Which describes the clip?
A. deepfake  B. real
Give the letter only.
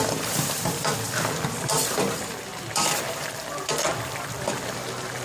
A